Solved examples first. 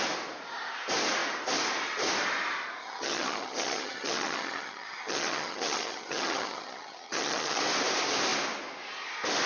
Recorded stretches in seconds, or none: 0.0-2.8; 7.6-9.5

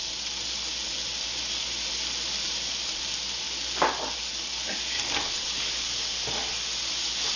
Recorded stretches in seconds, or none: 0.0-7.4

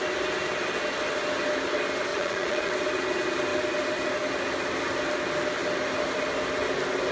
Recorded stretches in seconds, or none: 0.0-2.1; 2.7-7.1

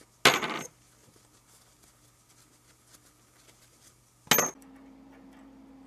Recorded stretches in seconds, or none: 0.0-5.9

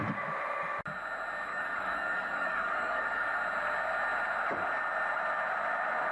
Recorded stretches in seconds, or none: 0.0-1.5; 3.4-6.1

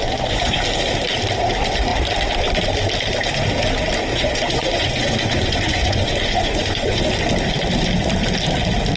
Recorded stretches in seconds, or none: 0.6-4.1; 7.0-9.0